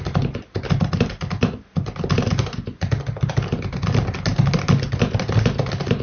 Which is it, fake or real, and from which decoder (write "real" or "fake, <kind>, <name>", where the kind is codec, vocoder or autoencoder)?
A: real